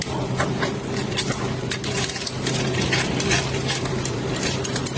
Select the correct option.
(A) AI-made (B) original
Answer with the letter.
A